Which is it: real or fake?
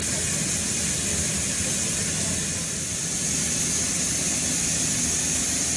real